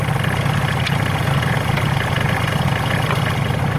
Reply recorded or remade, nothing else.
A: recorded